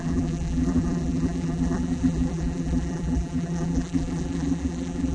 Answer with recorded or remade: remade